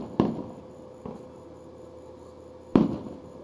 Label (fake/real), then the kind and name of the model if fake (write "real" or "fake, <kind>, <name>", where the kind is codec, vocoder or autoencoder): real